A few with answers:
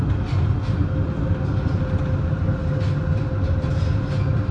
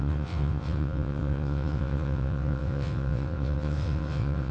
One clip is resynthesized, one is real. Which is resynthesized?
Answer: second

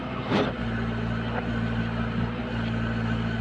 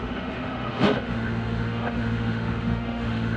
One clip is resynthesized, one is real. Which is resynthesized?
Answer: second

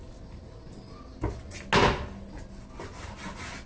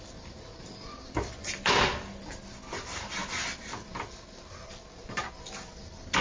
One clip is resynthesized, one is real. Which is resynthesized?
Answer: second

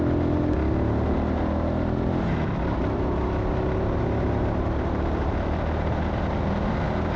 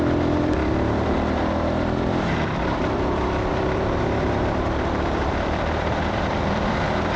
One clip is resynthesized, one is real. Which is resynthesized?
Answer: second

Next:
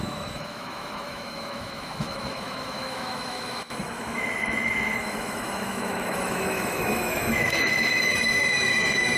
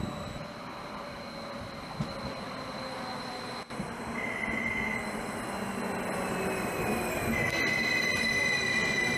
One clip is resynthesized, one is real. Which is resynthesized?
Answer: first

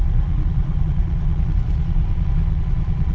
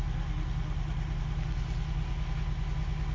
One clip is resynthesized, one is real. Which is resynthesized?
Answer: first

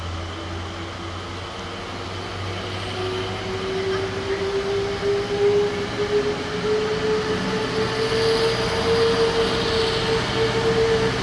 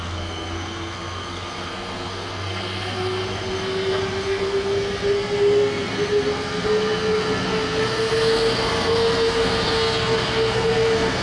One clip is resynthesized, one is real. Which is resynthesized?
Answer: second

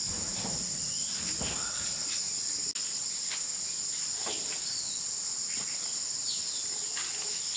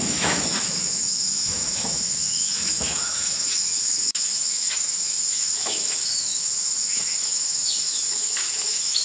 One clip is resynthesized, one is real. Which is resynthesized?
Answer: second